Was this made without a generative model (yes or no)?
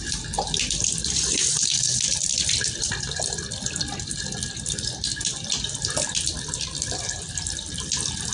no